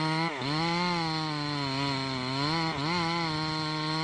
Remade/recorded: recorded